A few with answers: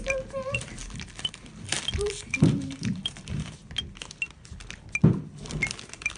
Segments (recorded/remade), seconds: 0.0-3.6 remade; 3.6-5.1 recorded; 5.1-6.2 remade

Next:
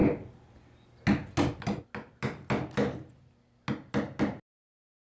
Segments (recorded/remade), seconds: 0.0-5.0 recorded